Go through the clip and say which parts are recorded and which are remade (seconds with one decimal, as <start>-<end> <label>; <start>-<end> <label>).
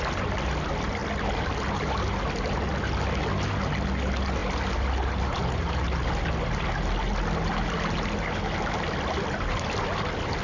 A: 0.0-10.4 recorded